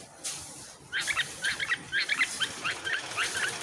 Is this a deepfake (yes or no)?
yes